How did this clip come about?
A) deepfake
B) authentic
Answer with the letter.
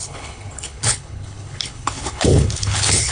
A